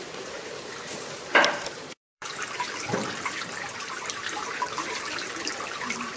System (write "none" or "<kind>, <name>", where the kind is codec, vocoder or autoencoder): vocoder, BigVGAN v2